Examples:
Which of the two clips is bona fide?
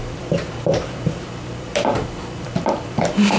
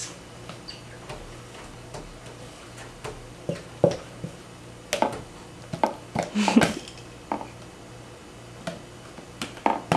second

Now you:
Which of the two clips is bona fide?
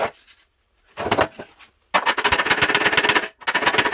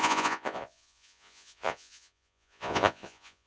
first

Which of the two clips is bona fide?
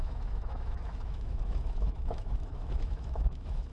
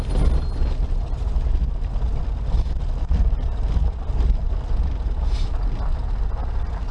second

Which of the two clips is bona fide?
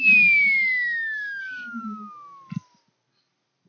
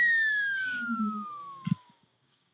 first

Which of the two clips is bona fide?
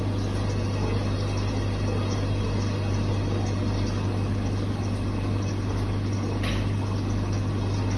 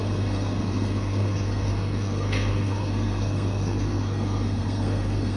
first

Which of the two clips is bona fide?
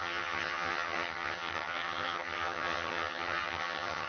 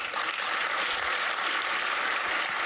second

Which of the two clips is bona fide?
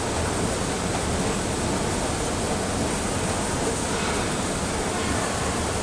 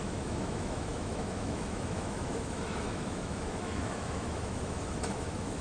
first